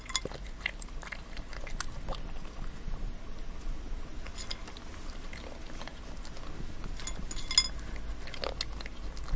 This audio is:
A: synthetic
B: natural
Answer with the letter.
B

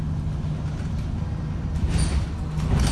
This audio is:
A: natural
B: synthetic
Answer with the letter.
A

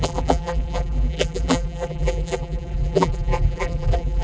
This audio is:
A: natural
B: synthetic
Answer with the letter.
B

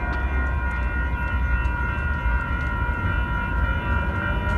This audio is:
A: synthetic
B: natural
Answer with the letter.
B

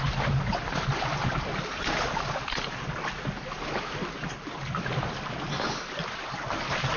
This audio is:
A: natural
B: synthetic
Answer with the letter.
A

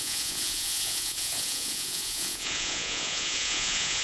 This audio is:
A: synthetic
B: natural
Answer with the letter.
A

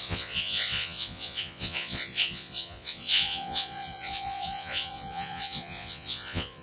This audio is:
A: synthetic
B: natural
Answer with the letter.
A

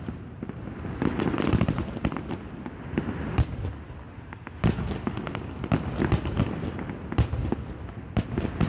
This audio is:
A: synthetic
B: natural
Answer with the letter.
B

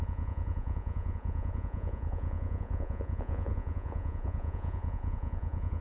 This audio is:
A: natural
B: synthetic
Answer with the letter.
B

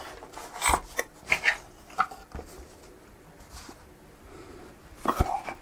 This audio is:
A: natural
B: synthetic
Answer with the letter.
A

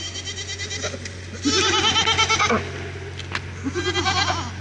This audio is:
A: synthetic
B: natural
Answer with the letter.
B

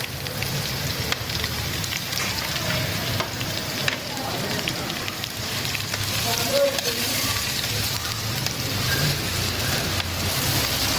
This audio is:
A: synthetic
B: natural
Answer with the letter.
A